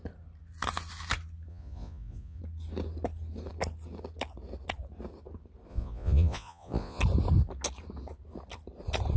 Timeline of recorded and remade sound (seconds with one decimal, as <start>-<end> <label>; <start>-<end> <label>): 0.0-1.5 recorded; 1.5-2.4 remade; 2.4-5.7 recorded; 5.7-7.0 remade; 7.0-9.2 recorded